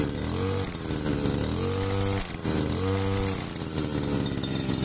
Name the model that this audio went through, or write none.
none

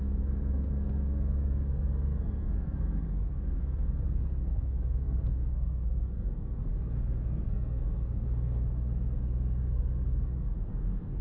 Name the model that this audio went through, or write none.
codec, SNAC